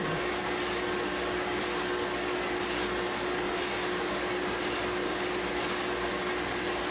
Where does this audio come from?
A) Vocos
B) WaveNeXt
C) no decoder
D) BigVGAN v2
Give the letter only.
C